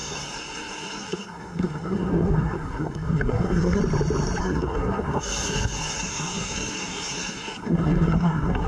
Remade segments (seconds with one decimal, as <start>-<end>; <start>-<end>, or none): 0.0-3.8; 4.4-8.7